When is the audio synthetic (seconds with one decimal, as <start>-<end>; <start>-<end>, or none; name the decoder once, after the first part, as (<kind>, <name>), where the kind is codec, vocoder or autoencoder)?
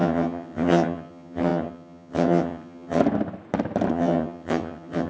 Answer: 0.0-3.0 (vocoder, HiFi-GAN); 3.9-5.1